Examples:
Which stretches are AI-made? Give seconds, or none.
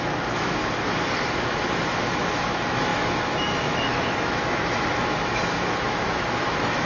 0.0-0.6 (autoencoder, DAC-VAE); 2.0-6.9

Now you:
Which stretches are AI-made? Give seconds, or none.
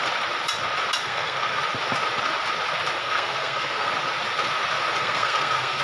1.0-1.6 (codec, SNAC); 3.0-3.9; 5.0-5.8